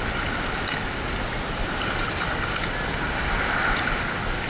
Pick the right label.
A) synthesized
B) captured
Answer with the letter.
B